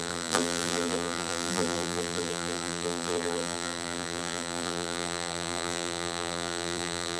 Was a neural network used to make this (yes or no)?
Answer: yes